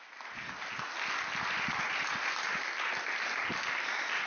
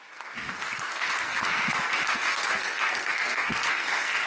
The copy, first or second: second